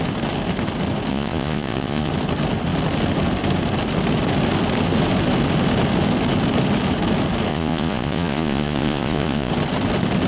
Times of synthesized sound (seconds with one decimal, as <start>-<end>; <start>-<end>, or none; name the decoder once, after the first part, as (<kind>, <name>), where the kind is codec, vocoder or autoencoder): 1.1-2.1 (vocoder, Vocos); 7.5-9.5